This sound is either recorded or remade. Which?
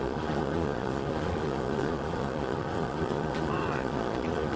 remade